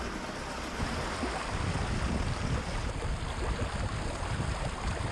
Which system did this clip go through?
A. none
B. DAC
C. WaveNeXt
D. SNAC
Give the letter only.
A